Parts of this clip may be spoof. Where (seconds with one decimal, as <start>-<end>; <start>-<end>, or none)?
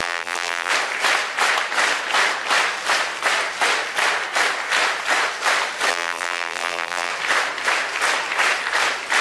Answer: 0.0-0.7; 5.9-7.1